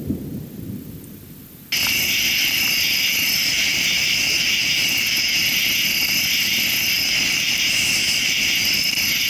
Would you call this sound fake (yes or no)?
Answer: no